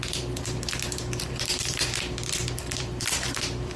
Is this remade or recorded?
remade